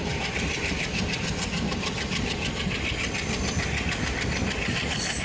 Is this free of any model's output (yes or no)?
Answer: yes